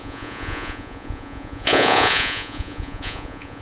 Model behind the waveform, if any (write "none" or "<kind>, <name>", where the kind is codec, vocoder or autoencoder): vocoder, Vocos